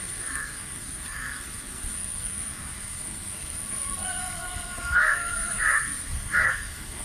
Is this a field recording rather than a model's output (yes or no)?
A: no